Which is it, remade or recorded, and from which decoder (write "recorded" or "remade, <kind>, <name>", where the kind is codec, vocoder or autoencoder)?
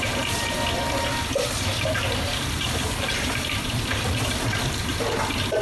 remade, vocoder, BigVGAN v2